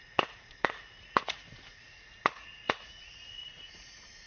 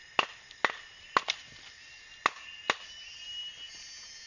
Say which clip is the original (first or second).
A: second